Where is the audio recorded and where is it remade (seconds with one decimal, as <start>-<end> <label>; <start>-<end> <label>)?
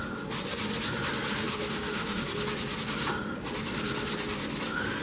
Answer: 0.0-1.4 recorded; 1.4-2.2 remade; 2.2-5.0 recorded